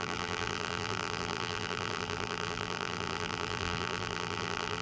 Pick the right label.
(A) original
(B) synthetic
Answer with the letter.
B